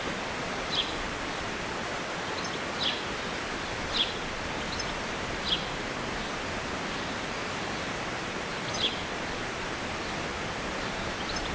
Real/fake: fake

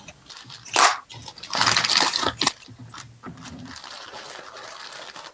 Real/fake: real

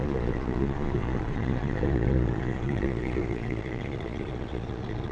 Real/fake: fake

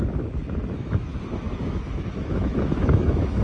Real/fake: fake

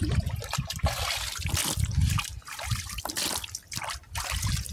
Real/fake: real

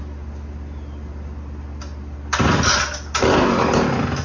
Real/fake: real